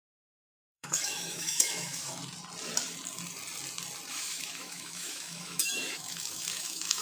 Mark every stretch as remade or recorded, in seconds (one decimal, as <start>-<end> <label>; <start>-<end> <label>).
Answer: 0.0-2.2 remade; 2.2-4.1 recorded; 4.1-7.0 remade